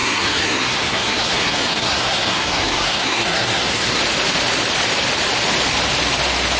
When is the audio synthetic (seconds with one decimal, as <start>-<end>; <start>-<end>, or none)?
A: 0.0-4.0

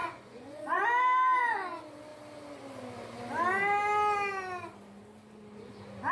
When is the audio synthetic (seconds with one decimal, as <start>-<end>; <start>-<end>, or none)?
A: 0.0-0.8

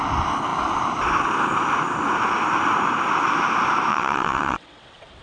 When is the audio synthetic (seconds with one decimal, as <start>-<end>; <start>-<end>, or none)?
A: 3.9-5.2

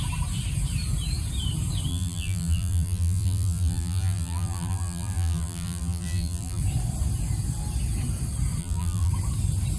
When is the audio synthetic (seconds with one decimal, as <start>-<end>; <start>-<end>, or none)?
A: 1.9-6.6; 8.6-9.1